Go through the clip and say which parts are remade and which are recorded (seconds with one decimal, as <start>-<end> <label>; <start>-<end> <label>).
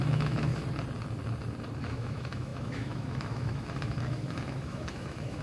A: 0.0-0.5 remade; 0.5-1.8 recorded; 1.8-5.4 remade